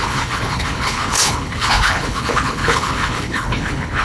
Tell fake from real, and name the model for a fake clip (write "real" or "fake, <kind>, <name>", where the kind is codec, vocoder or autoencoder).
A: fake, codec, HILCodec